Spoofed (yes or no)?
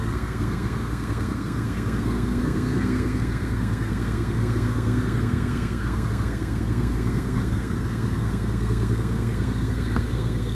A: yes